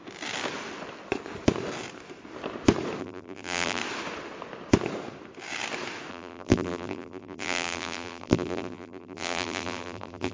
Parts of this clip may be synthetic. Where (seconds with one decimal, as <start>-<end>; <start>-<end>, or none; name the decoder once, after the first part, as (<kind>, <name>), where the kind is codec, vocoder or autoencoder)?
3.0-3.8 (vocoder, BigVGAN v2); 6.1-10.3